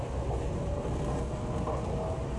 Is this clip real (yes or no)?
yes